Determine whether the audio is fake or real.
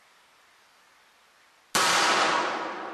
real